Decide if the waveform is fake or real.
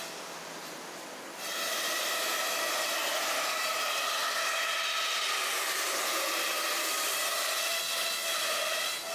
real